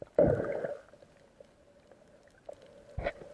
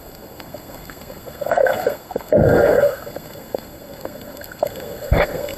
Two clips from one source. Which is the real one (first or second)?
first